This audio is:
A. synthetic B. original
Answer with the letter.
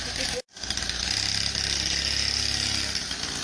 B